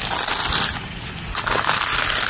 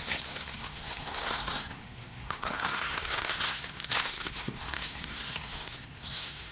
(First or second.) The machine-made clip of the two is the second